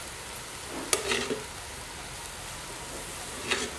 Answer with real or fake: real